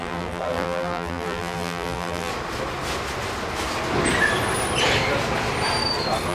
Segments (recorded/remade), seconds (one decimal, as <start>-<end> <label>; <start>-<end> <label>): 0.0-2.3 remade; 2.3-6.3 recorded